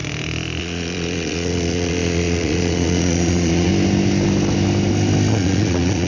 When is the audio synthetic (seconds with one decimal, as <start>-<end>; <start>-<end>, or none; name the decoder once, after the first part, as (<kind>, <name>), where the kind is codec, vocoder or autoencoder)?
0.6-3.7 (vocoder, Vocos); 5.3-6.1